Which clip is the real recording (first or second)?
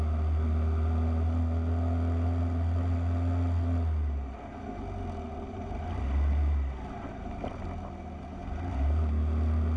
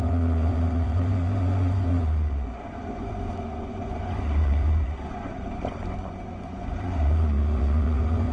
first